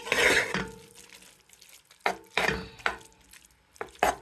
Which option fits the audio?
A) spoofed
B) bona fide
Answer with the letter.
B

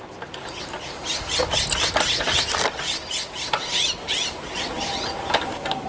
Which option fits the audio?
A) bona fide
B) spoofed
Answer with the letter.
A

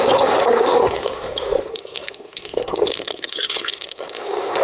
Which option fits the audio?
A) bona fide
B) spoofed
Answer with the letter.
B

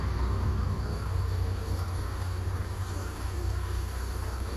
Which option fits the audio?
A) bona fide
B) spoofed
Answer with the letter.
B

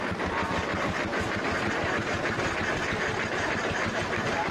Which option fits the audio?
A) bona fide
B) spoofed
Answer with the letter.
A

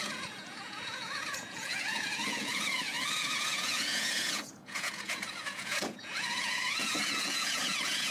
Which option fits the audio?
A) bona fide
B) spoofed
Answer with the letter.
B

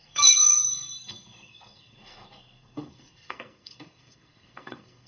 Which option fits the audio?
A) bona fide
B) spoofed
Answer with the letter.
B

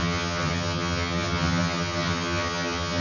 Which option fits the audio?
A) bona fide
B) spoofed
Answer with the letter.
B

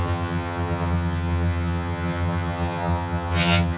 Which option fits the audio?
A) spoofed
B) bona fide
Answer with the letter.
A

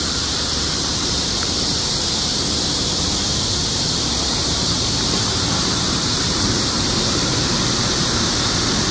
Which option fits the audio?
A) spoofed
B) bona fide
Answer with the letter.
A